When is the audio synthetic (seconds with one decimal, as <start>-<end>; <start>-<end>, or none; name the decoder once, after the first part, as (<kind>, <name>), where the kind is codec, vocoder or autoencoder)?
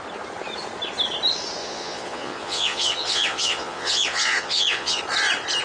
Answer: 1.6-5.0 (vocoder, Vocos)